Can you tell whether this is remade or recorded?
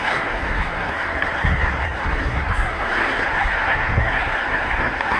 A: remade